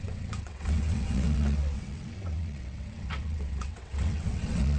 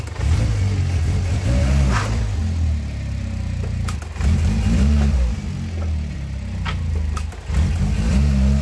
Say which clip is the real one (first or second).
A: second